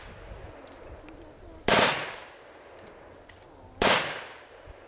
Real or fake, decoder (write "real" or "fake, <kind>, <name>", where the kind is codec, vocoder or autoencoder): real